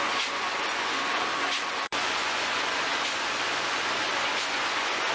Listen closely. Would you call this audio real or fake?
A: fake